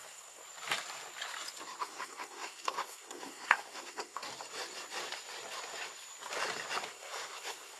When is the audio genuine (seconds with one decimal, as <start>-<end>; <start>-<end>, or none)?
0.4-1.8; 4.3-6.9